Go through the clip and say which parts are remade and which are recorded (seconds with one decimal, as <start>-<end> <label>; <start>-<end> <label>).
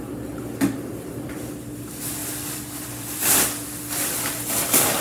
0.0-2.2 recorded; 2.2-5.0 remade